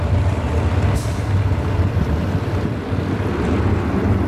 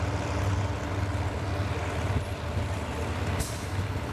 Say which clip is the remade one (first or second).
first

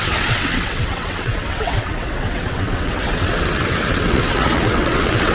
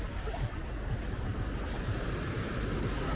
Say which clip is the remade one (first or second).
first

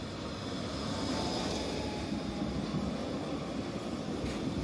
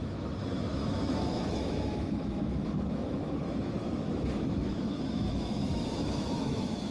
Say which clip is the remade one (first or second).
second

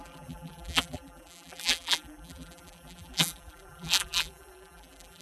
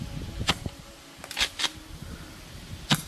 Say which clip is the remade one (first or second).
first